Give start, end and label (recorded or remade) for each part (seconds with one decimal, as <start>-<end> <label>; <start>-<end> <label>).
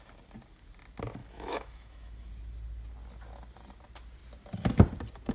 0.0-1.2 recorded; 1.2-2.3 remade; 2.3-5.3 recorded